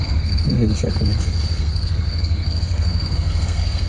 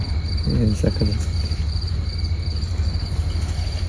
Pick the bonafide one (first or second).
second